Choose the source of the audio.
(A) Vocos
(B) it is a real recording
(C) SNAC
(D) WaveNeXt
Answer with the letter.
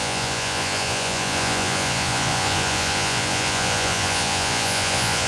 A